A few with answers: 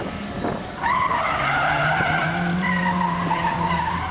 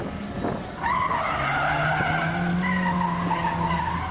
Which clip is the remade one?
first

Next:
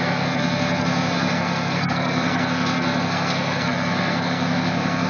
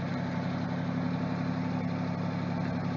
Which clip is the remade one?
first